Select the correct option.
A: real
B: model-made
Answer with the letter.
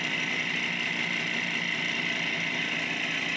A